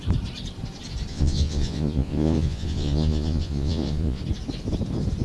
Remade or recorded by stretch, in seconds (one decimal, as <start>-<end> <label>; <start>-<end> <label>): 0.0-1.1 recorded; 1.1-4.2 remade; 4.2-5.2 recorded